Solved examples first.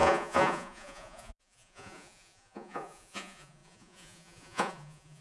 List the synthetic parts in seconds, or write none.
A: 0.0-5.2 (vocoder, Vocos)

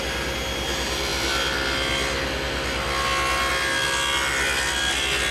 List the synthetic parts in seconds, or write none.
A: none

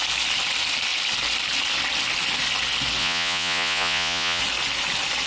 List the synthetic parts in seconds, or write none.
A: 3.0-4.4 (vocoder, Vocos)

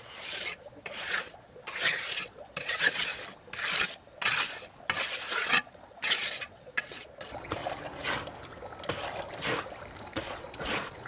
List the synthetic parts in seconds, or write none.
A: 0.0-3.1 (vocoder, Vocos); 5.0-7.6; 10.0-11.1

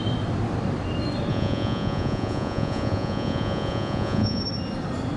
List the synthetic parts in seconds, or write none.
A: 1.3-4.4 (vocoder, Vocos)

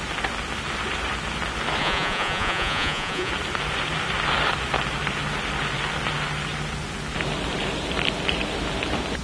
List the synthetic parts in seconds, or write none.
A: 1.8-3.3 (vocoder, Vocos)